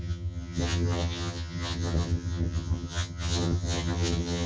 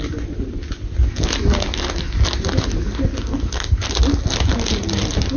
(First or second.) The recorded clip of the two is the second